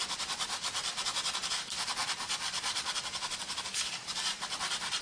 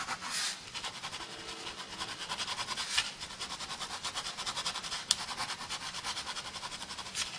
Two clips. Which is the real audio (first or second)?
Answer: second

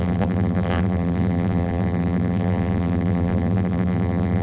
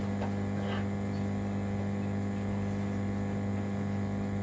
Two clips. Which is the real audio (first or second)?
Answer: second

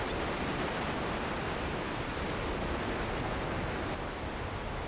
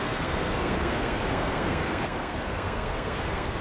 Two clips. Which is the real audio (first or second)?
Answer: first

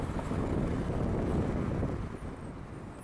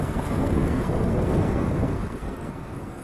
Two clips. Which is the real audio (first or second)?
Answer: first